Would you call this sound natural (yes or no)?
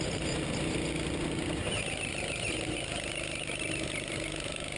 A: yes